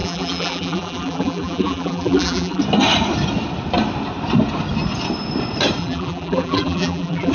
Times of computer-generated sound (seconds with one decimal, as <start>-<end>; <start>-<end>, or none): 0.0-2.6; 5.8-7.3